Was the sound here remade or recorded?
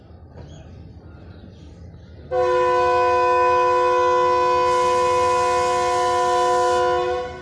recorded